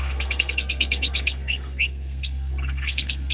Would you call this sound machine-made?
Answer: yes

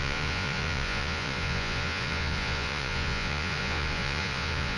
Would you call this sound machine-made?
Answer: yes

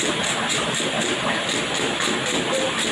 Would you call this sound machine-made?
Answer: no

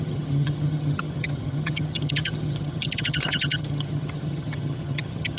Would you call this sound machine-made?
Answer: yes